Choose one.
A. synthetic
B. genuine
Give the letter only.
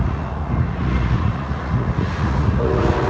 A